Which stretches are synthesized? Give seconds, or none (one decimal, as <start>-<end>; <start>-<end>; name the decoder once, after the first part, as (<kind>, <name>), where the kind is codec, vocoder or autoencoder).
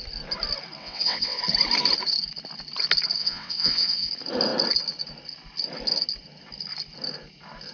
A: 0.8-1.4 (vocoder, WaveNeXt); 3.2-4.1